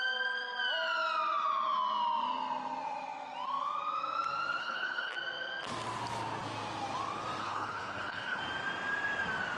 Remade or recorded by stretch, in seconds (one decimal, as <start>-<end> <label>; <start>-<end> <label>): 0.0-4.6 recorded; 4.6-5.1 remade; 5.1-7.4 recorded; 7.4-8.4 remade; 8.4-9.6 recorded